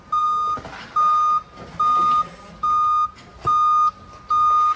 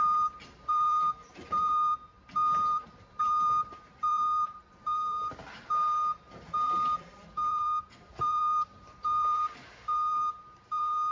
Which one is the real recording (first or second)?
first